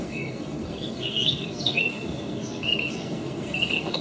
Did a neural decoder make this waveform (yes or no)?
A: yes